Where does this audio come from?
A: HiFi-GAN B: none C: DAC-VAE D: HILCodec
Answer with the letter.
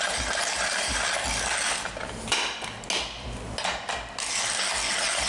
B